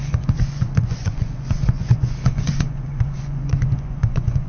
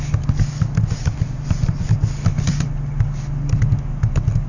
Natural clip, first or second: second